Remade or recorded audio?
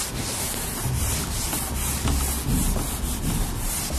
recorded